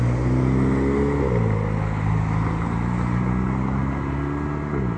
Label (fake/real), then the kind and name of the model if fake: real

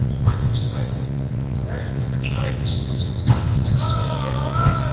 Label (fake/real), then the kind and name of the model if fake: fake, vocoder, WaveNeXt